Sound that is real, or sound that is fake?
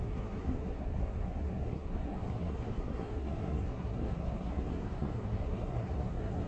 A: fake